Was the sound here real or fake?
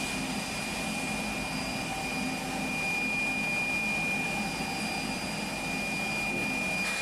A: real